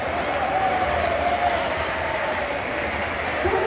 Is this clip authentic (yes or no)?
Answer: no